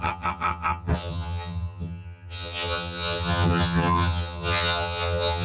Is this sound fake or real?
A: fake